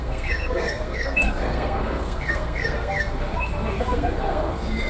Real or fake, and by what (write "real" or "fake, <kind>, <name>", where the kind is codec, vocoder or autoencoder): fake, codec, SNAC